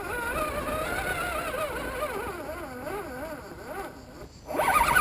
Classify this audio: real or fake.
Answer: real